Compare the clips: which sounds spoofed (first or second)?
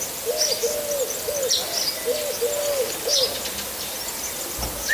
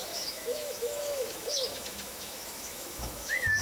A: second